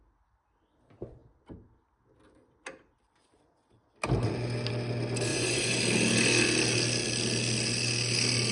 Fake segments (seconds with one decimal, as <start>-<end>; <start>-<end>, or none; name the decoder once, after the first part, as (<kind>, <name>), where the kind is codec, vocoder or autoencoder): 5.3-5.8 (vocoder, Vocos)

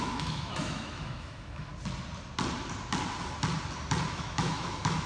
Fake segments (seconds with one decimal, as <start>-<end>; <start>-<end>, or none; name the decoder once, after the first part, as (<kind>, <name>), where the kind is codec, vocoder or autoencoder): 0.0-1.7 (autoencoder, DAC-VAE); 4.1-5.1

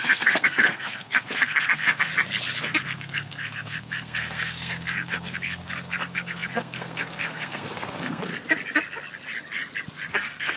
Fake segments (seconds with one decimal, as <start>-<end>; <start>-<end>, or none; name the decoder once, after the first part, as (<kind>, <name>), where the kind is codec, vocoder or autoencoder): 0.0-2.1 (codec, SNAC); 2.6-8.3; 10.1-10.6

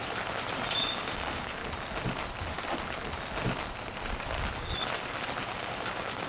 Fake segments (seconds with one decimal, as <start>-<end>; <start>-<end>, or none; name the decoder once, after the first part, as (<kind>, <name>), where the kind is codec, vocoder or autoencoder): 0.8-1.6 (codec, DAC); 5.4-6.3